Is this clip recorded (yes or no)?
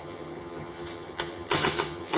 no